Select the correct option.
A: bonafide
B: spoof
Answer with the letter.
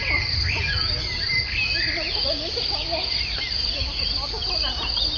A